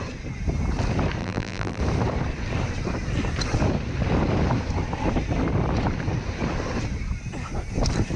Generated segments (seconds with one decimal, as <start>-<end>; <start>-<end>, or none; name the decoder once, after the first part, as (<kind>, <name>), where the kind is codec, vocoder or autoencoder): 1.2-1.8 (vocoder, BigVGAN v2)